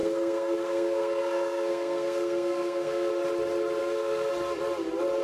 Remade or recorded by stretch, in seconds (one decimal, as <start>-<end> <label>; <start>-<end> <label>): 0.0-3.1 remade; 3.1-3.8 recorded; 3.8-4.3 remade; 4.3-5.2 recorded